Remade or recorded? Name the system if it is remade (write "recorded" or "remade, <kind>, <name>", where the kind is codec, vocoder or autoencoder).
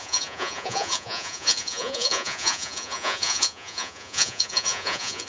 remade, vocoder, Vocos